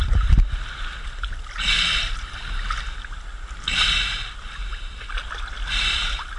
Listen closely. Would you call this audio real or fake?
real